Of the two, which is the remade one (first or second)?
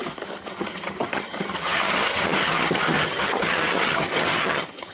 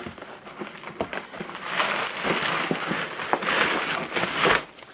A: first